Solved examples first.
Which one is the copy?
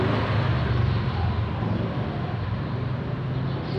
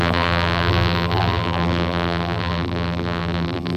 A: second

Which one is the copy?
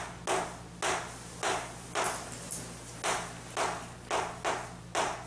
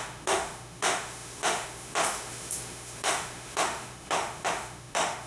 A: second